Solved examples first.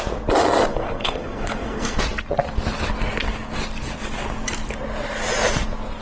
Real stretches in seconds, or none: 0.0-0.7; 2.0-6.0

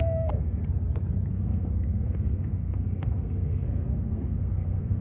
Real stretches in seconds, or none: 0.6-1.3

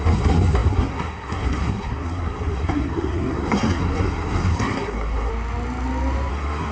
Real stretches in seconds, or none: 5.3-6.3

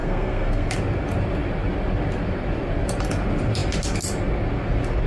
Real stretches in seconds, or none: 0.7-5.1

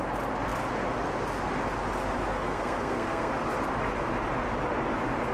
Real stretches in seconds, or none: 0.0-2.3; 3.3-5.3